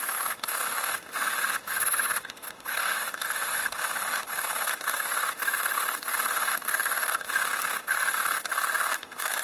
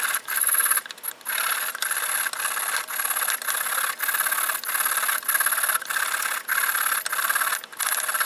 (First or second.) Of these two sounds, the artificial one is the first